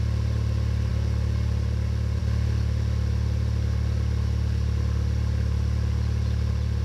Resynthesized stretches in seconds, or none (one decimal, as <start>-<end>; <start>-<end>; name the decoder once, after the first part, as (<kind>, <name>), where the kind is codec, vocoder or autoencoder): none